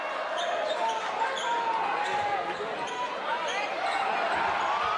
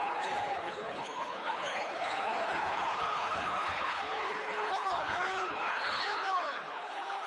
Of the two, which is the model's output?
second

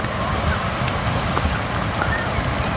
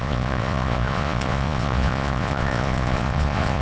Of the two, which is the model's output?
second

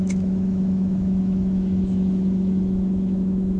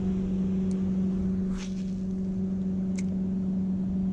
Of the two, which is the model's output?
first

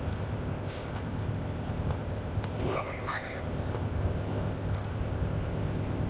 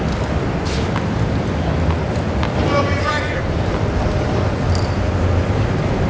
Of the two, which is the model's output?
first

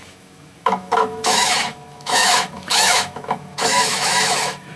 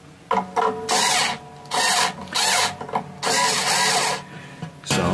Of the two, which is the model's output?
first